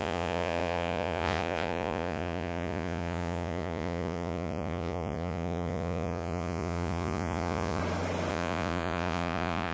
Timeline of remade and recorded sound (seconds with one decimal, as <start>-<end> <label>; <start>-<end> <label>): 0.0-7.8 remade; 7.8-8.3 recorded; 8.3-9.7 remade